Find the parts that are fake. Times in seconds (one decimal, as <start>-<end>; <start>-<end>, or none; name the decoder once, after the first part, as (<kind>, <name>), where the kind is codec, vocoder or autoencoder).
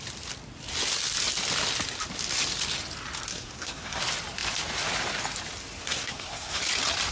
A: 3.3-4.0 (codec, SNAC); 5.8-6.6